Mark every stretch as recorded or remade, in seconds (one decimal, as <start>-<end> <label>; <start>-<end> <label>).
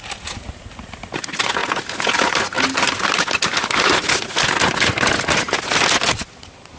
0.0-6.8 recorded